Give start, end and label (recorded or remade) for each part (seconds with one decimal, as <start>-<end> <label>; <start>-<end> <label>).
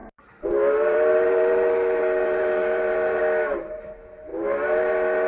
0.0-3.2 remade; 3.2-4.3 recorded; 4.3-5.3 remade